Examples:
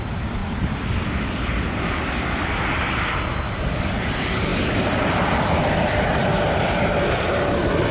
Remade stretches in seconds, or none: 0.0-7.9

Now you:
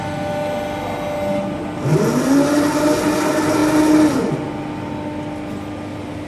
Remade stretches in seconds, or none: none